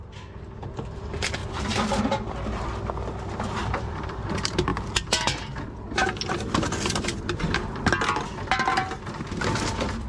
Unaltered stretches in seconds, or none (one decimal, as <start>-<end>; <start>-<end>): 0.0-1.4; 2.0-3.6; 4.2-10.1

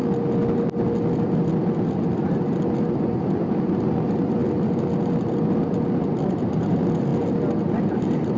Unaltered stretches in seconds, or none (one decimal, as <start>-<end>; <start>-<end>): 0.0-3.0; 4.4-6.3; 7.1-7.8

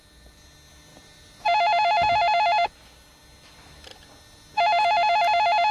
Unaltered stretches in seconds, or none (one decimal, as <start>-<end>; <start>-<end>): 0.0-5.7

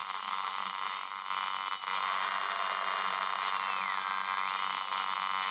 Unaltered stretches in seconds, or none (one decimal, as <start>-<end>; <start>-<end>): 1.2-5.5

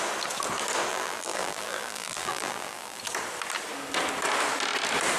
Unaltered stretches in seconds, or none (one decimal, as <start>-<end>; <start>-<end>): 0.0-0.9; 3.0-5.2

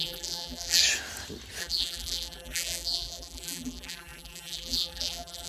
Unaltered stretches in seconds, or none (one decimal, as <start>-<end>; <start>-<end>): 0.8-1.6

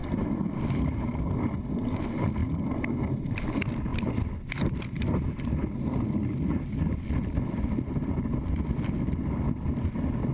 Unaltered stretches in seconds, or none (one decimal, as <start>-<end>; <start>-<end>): 1.4-2.4; 3.1-3.9; 5.7-10.3

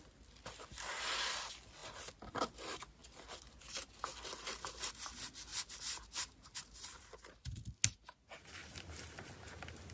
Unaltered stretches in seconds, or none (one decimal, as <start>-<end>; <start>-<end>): 0.0-5.5; 7.6-8.6; 9.3-9.9